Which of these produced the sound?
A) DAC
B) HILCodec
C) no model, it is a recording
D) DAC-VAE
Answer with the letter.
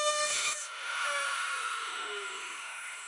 D